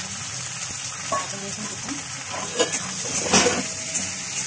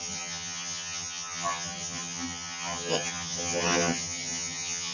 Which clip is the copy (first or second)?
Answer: second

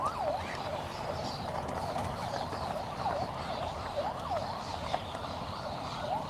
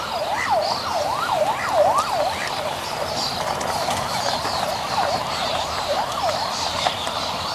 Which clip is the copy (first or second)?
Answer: first